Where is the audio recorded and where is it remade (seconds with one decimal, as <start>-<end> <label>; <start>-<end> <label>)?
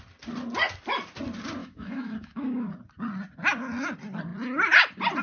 0.0-1.6 recorded; 1.6-2.7 remade; 2.7-5.2 recorded